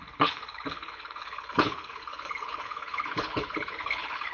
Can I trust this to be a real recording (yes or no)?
no